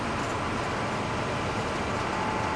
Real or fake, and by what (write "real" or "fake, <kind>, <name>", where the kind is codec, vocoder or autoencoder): real